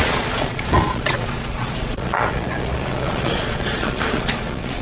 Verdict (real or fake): fake